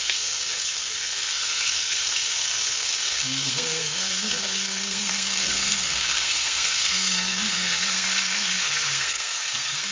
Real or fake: fake